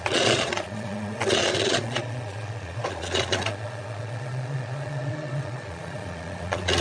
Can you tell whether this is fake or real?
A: fake